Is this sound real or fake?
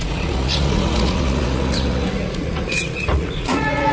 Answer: fake